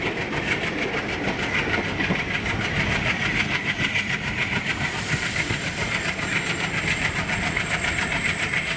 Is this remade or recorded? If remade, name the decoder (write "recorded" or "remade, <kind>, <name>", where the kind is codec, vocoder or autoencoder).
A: remade, vocoder, BigVGAN v2